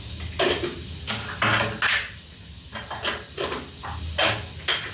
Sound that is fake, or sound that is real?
real